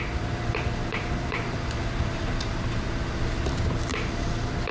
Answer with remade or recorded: remade